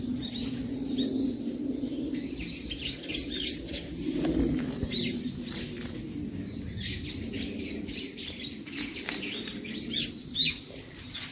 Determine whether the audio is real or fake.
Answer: real